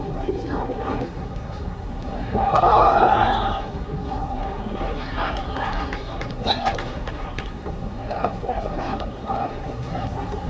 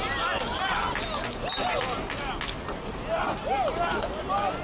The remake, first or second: first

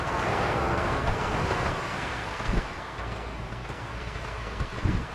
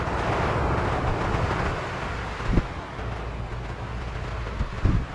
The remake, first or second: first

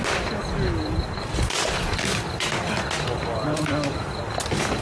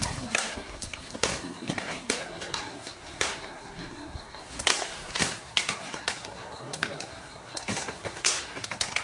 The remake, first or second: second